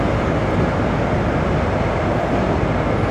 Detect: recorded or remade recorded